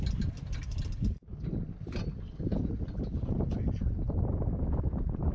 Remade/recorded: recorded